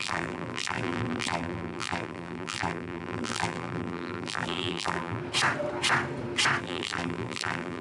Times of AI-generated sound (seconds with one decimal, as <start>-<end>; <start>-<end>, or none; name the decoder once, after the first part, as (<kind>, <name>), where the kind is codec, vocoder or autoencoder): 0.0-5.2 (vocoder, BigVGAN v2); 6.6-7.8